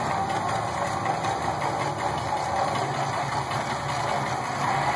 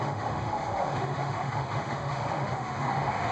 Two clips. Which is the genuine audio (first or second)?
first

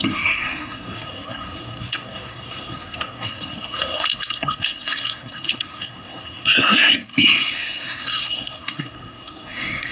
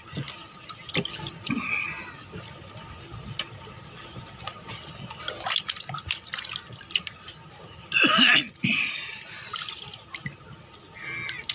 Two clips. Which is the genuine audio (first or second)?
second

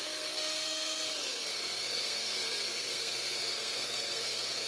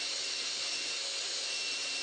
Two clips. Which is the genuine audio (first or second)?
second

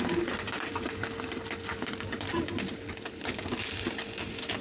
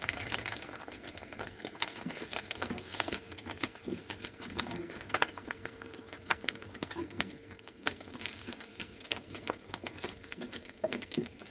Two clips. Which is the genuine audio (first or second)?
first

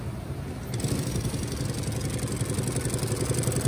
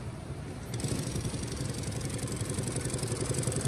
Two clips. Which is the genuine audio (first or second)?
first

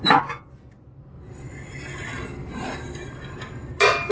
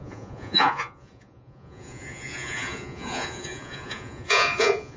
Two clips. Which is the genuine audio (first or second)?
first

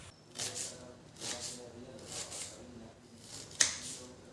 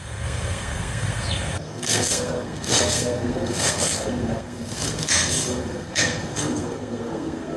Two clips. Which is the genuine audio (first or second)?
first